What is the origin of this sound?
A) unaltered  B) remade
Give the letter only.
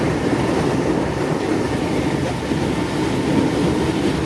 A